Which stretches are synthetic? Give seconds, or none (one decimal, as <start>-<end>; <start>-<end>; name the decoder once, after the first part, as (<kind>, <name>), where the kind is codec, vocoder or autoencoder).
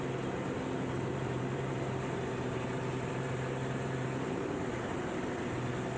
1.1-4.7 (vocoder, BigVGAN v2)